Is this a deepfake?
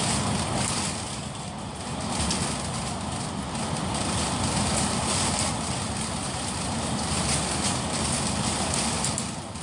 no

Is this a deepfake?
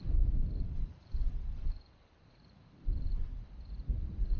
yes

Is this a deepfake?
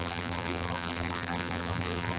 yes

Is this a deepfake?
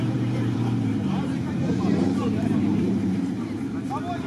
yes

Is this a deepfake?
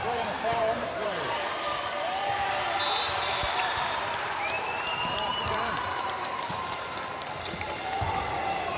yes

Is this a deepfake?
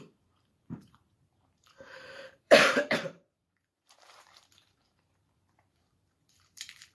yes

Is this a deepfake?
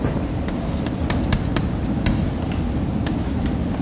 no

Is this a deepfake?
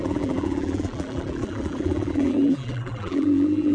yes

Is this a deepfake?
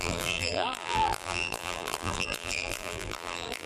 yes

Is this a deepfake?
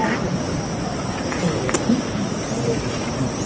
yes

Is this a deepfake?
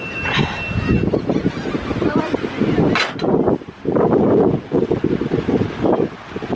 no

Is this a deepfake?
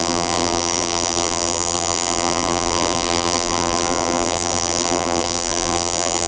yes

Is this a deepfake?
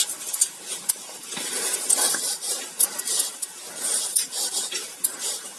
no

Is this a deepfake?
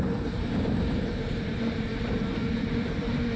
yes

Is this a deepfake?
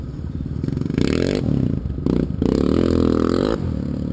yes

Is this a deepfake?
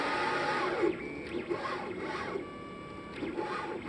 no